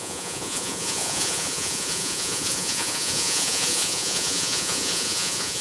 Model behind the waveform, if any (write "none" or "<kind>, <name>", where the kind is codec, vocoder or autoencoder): vocoder, Vocos